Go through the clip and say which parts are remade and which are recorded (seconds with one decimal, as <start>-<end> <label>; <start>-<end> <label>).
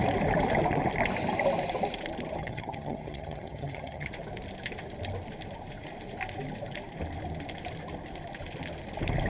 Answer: 0.0-2.4 recorded; 2.4-4.1 remade; 4.1-9.3 recorded